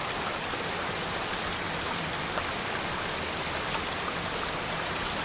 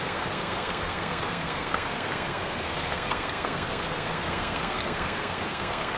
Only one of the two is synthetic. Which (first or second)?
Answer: second